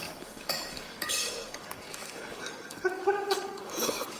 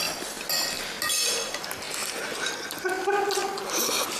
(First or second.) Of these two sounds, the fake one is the first